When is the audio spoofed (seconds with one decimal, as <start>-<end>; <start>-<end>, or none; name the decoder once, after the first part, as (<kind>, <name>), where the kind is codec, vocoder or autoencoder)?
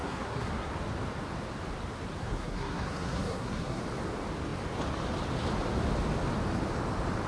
0.0-0.7 (codec, SNAC); 2.2-3.8